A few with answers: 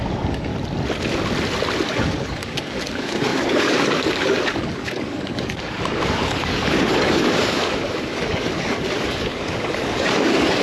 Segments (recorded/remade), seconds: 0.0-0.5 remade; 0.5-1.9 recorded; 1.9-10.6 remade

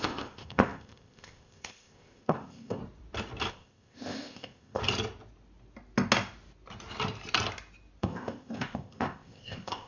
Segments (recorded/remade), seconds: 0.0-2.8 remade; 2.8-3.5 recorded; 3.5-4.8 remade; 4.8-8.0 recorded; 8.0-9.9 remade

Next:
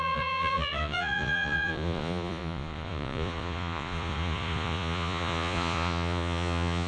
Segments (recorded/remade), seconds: 0.0-6.9 remade